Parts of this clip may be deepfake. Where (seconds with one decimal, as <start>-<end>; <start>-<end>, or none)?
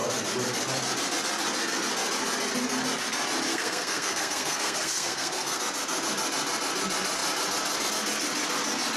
3.5-5.6